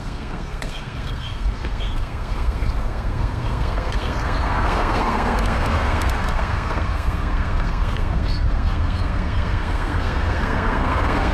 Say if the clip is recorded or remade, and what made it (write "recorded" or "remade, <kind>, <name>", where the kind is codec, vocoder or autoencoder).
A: remade, codec, SNAC